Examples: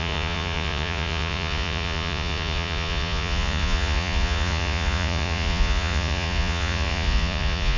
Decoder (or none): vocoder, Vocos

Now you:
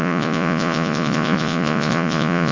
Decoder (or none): vocoder, Vocos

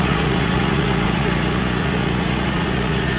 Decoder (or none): vocoder, Vocos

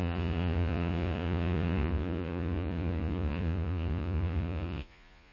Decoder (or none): vocoder, Vocos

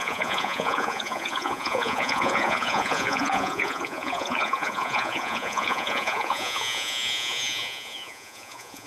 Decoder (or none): vocoder, Vocos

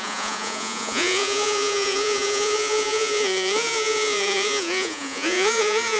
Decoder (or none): vocoder, Vocos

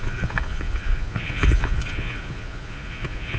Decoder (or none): vocoder, Vocos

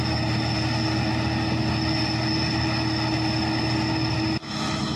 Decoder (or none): none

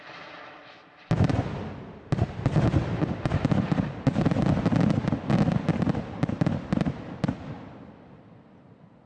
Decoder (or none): none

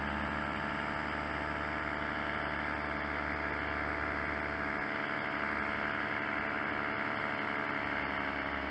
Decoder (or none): none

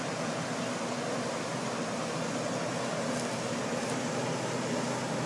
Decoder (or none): none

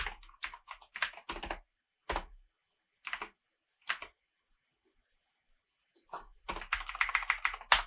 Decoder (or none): none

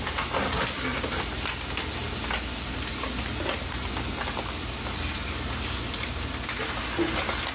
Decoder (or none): none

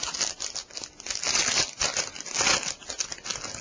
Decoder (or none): none